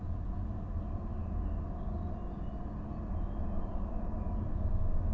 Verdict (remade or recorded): recorded